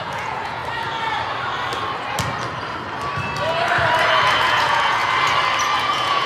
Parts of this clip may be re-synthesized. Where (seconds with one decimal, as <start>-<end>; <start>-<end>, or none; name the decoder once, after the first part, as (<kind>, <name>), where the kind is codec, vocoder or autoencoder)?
0.0-0.6 (vocoder, Vocos); 4.4-5.0; 5.8-6.3